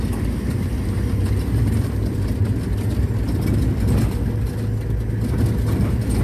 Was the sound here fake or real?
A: real